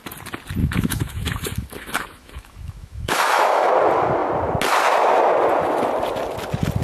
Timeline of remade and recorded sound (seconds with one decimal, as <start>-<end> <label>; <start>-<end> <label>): 0.0-0.6 recorded; 0.6-3.7 remade; 3.7-6.8 recorded